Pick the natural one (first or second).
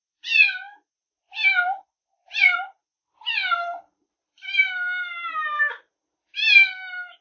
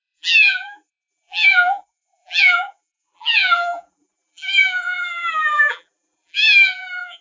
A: first